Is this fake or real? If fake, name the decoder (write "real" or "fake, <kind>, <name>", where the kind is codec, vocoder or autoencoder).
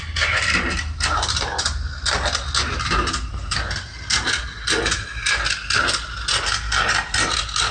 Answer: real